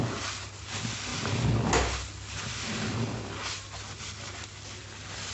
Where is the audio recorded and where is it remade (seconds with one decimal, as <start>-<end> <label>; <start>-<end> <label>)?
0.0-5.3 recorded